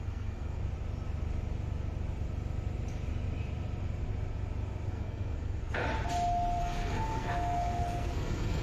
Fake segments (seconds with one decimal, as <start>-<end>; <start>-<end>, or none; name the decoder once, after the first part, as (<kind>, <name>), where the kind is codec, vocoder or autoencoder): 0.0-0.6 (codec, SNAC); 4.9-5.8; 6.6-8.6